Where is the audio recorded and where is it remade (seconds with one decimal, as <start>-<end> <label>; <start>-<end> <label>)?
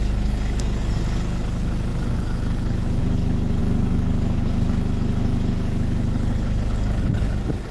0.0-7.7 remade